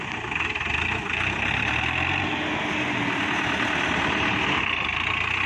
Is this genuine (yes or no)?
yes